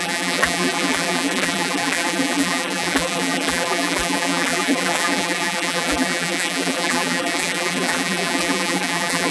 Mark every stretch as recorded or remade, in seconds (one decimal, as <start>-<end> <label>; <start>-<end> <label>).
0.0-9.3 remade